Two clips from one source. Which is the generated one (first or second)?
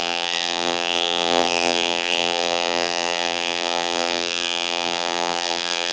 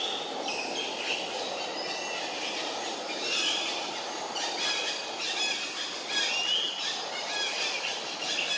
first